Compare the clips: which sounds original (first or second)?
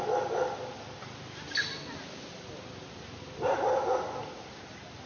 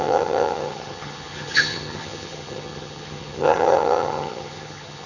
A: first